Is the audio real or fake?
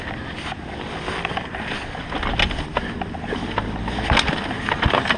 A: real